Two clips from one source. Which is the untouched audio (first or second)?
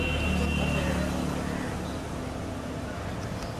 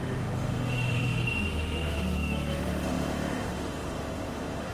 first